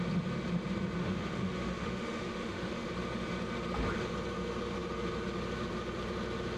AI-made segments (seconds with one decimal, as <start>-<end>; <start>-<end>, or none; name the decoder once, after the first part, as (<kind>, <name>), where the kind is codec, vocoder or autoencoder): 1.0-2.9 (autoencoder, DAC-VAE)